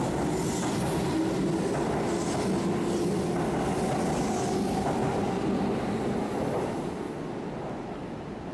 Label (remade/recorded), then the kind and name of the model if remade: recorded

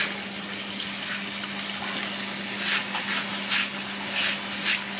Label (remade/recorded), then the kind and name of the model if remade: recorded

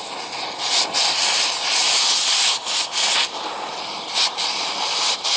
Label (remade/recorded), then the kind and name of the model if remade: recorded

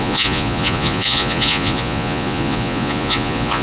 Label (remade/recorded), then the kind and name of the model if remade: remade, vocoder, Vocos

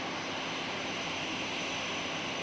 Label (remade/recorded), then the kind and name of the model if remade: recorded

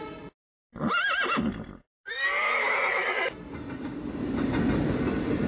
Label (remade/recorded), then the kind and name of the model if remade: recorded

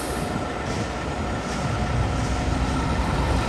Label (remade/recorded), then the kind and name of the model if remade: recorded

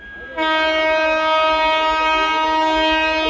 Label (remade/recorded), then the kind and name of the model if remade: recorded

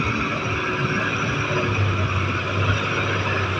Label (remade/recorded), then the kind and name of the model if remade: recorded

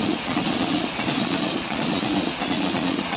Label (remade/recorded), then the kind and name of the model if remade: remade, vocoder, Vocos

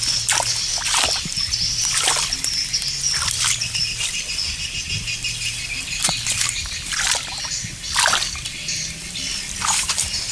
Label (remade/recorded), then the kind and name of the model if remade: recorded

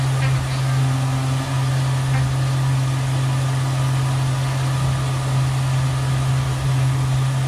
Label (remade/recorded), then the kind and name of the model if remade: recorded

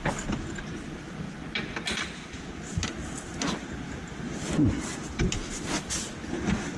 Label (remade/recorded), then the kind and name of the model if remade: recorded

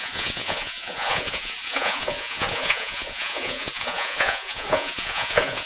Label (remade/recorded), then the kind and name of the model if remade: remade, vocoder, Vocos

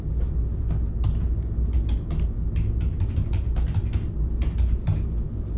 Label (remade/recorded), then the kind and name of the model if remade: recorded